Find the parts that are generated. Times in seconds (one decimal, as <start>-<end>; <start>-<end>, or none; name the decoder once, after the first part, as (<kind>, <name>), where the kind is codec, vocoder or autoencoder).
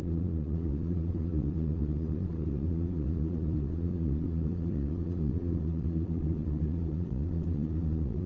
0.0-8.3 (vocoder, Vocos)